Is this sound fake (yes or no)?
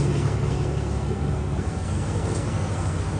yes